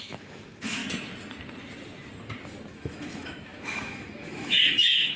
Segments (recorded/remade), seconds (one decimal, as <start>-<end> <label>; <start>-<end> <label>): 0.0-0.8 remade; 0.8-2.7 recorded; 2.7-5.2 remade